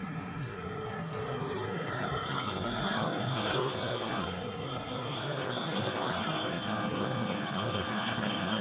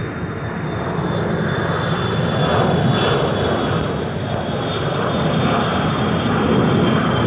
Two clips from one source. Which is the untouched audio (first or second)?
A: second